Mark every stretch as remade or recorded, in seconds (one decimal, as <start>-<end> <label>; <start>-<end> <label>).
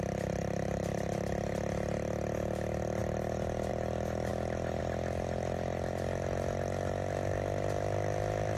0.0-8.6 recorded